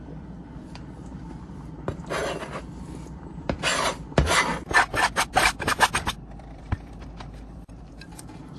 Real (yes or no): no